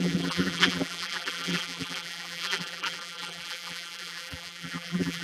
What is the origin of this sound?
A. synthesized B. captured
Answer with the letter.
A